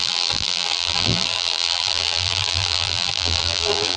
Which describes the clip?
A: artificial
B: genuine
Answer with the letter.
A